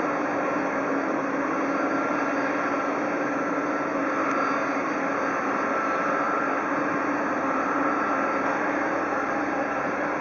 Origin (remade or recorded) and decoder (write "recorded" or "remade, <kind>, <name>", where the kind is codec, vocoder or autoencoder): recorded